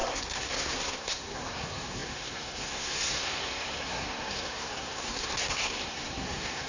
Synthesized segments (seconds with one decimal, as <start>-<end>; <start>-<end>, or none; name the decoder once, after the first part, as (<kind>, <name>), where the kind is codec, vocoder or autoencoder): 0.0-6.7 (codec, SNAC)